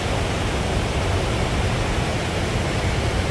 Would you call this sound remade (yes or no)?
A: no